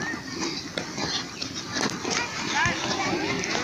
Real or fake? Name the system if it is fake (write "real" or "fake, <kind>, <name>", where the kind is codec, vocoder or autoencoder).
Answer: real